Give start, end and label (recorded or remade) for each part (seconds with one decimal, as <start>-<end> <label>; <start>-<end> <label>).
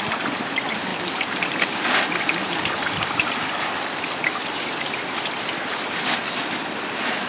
0.0-7.3 remade